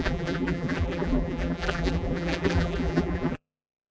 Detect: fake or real fake